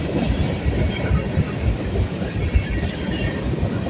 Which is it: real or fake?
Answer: real